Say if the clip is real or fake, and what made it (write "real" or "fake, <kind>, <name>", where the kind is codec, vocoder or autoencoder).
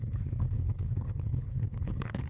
fake, codec, HILCodec